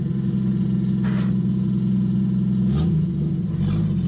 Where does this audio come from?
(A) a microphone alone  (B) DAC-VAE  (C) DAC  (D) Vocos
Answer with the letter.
A